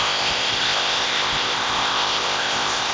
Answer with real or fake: fake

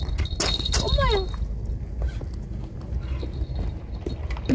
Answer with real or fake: real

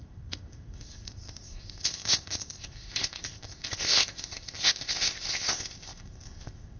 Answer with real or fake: fake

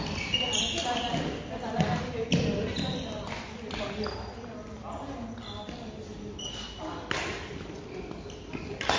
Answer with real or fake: real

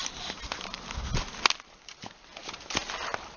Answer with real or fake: real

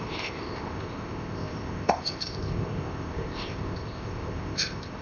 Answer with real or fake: fake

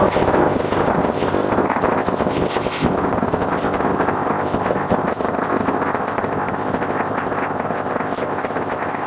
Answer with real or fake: fake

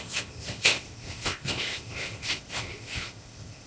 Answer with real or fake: fake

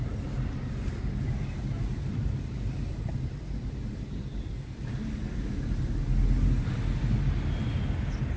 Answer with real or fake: real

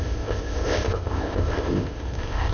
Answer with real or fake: fake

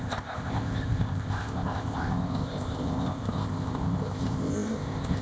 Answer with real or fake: fake